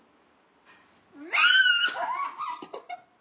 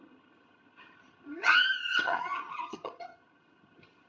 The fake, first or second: second